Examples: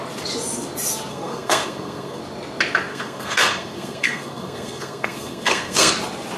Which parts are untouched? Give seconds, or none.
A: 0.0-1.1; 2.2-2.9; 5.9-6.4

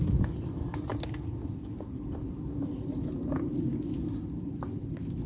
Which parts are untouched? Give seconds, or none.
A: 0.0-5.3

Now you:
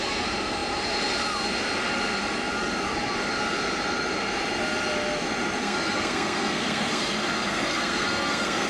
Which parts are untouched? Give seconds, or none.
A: 0.0-5.6

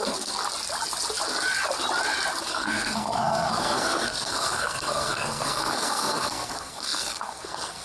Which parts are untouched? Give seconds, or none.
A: 0.4-2.5